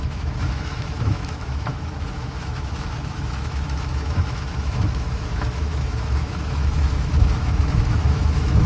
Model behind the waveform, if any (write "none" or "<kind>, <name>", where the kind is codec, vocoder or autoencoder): autoencoder, DAC-VAE